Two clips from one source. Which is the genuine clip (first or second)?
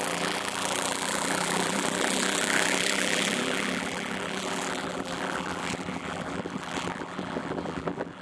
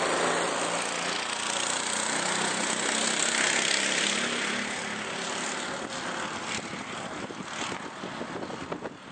second